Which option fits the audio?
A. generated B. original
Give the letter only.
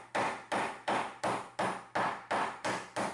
B